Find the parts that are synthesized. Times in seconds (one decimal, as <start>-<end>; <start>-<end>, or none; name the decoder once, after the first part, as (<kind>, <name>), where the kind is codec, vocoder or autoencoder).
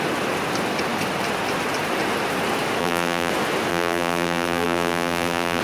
2.8-3.3 (vocoder, BigVGAN v2); 3.7-5.6